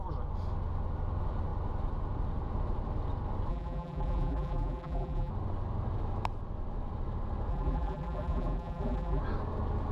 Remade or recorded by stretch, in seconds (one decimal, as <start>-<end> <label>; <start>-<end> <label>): 0.0-3.5 recorded; 3.5-5.3 remade; 5.3-7.5 recorded; 7.5-9.2 remade; 9.2-9.9 recorded